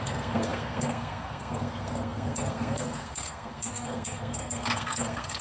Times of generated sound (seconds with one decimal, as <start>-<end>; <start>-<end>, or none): 0.0-5.4